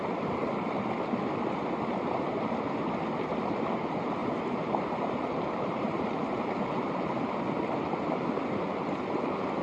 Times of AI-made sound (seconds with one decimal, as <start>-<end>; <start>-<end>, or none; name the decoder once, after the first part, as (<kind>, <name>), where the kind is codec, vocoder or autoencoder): 4.2-7.4 (vocoder, BigVGAN v2)